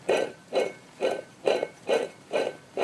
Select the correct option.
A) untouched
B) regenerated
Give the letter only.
B